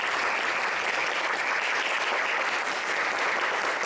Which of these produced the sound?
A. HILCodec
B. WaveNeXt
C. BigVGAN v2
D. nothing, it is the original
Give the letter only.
D